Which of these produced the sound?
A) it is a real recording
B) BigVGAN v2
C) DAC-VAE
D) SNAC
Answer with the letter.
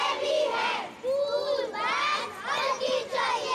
A